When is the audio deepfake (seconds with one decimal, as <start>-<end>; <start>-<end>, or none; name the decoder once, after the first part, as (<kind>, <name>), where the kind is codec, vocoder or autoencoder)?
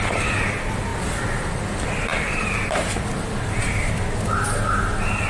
0.9-1.6 (vocoder, BigVGAN v2); 2.1-3.9